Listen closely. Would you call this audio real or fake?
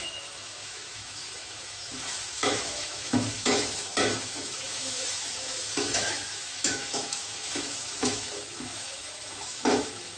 fake